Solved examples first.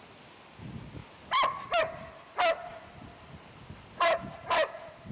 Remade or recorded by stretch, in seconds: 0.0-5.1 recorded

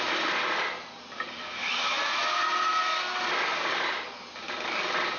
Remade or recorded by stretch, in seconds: 0.0-5.2 recorded

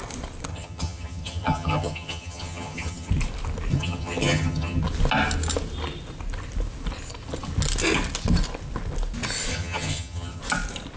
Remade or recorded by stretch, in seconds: 0.0-0.5 recorded; 0.5-3.1 remade; 3.1-3.7 recorded; 3.7-4.8 remade; 4.8-9.5 recorded; 9.5-10.4 remade; 10.4-11.0 recorded

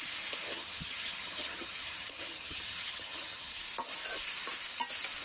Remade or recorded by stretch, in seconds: 0.0-0.5 recorded; 0.5-3.6 remade; 3.6-5.2 recorded

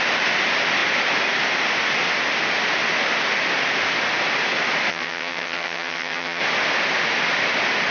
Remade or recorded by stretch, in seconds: 0.0-4.9 recorded; 4.9-6.4 remade; 6.4-7.9 recorded

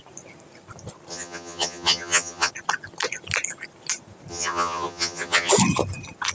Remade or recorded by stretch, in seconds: 0.0-1.1 recorded; 1.1-2.5 remade; 2.5-4.3 recorded; 4.3-5.5 remade; 5.5-6.3 recorded